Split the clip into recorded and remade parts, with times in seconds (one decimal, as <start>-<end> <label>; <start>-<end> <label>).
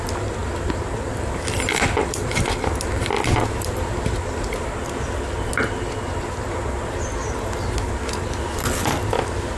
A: 0.0-0.4 recorded; 0.4-4.8 remade; 4.8-9.6 recorded